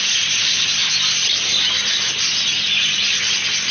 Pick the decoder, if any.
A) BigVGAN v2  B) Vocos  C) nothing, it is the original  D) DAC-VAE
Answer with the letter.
C